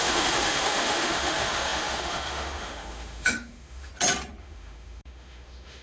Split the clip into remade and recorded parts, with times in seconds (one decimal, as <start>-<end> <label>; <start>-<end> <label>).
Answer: 0.0-3.9 remade; 3.9-4.4 recorded; 4.4-5.8 remade